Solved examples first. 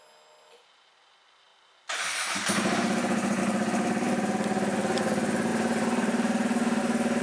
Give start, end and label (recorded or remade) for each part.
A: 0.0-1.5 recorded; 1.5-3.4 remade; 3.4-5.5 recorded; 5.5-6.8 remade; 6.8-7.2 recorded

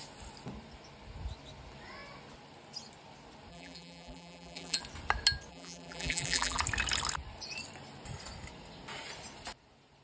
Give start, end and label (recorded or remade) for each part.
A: 0.0-3.5 recorded; 3.5-4.8 remade; 4.8-5.5 recorded; 5.5-6.6 remade; 6.6-10.0 recorded